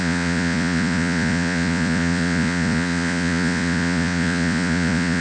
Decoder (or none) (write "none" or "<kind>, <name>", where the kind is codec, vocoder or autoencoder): vocoder, Vocos